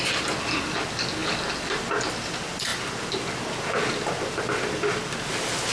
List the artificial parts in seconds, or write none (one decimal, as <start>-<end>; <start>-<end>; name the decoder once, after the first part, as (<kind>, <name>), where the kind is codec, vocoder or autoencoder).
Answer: none

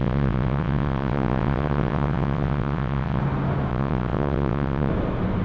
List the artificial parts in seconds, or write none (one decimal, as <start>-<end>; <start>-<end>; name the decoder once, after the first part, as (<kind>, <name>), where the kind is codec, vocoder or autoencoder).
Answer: 0.0-3.2 (vocoder, WaveNeXt); 3.7-4.9